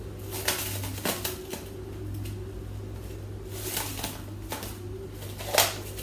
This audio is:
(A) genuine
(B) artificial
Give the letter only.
A